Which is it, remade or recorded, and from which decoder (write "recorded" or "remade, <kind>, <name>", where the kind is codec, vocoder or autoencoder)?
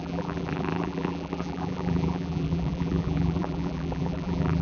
remade, vocoder, BigVGAN v2